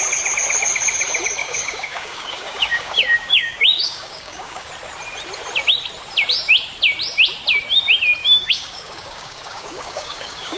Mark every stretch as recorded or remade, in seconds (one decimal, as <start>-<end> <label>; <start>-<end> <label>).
0.0-1.4 recorded; 1.4-4.7 remade; 4.7-8.2 recorded; 8.2-10.6 remade